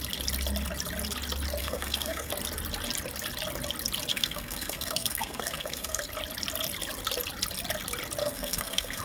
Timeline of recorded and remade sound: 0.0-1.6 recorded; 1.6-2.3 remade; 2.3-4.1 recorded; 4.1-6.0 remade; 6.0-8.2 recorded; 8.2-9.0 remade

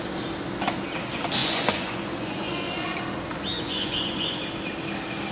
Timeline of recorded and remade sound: 0.0-1.4 recorded; 1.4-3.0 remade; 3.0-3.5 recorded; 3.5-4.4 remade; 4.4-5.3 recorded

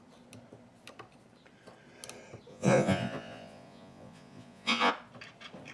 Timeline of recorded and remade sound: 0.0-2.5 recorded; 2.5-4.9 remade; 4.9-5.7 recorded